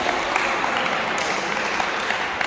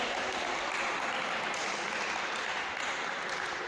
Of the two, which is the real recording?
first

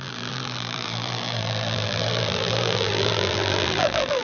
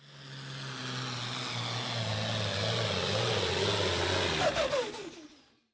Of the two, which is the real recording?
second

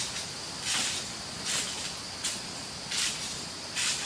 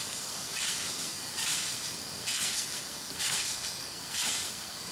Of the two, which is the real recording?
first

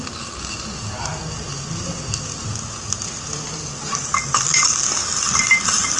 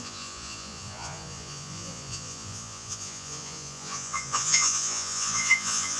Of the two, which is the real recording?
first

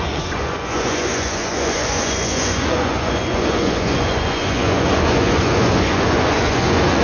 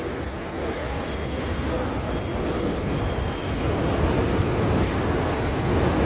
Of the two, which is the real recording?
second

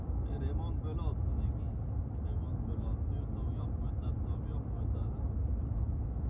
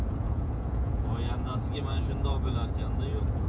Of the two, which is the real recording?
first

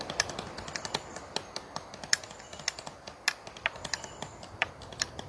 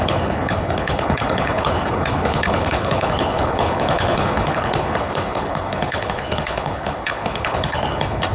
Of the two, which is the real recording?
first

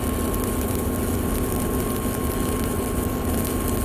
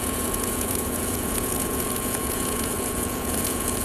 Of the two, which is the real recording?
first